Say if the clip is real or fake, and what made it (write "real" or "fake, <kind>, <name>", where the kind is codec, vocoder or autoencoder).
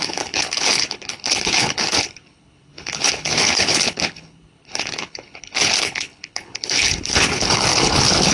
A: fake, codec, HILCodec